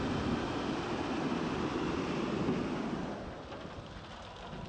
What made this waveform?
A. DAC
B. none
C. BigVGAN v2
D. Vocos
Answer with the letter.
B